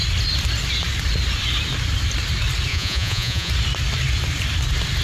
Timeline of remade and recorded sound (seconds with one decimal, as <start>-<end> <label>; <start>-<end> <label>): 0.0-2.7 recorded; 2.7-3.5 remade; 3.5-5.0 recorded